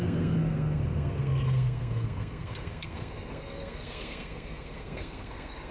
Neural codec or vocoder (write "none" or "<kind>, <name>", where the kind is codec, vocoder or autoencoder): codec, SNAC